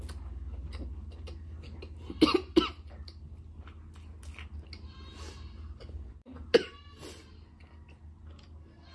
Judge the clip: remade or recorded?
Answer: recorded